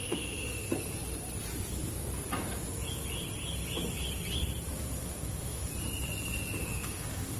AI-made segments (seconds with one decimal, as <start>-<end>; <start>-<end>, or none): 0.0-0.6; 5.0-5.7; 6.6-7.4